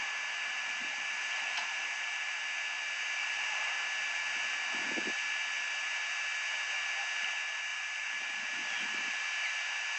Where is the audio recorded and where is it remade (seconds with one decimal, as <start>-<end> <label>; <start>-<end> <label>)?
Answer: 0.0-0.6 recorded; 0.6-2.4 remade; 2.4-3.2 recorded; 3.2-3.7 remade; 3.7-7.7 recorded; 7.7-9.2 remade; 9.2-10.0 recorded